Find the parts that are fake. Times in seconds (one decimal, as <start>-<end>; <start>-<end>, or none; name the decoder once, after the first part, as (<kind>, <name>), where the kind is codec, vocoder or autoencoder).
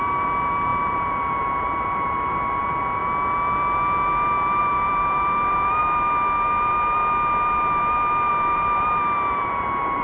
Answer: 0.0-3.0 (vocoder, BigVGAN v2); 4.6-5.8; 8.3-10.0